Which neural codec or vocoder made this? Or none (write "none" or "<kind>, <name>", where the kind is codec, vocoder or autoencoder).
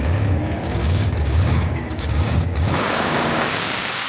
codec, DAC